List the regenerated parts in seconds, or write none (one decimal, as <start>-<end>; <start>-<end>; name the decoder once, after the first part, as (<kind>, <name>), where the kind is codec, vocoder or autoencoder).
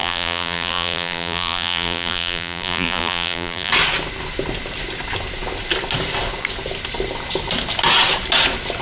0.0-3.7 (vocoder, BigVGAN v2)